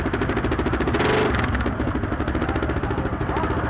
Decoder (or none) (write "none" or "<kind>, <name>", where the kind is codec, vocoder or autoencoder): none